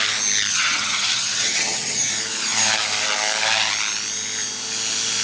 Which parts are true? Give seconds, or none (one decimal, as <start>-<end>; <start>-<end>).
0.0-0.5; 2.1-5.2